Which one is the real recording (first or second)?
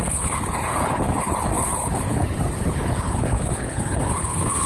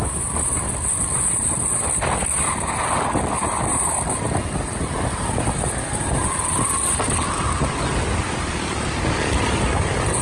second